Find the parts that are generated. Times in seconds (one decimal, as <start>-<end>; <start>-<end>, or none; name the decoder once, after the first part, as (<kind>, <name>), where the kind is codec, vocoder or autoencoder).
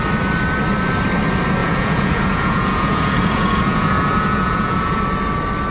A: 1.6-5.0 (vocoder, Vocos)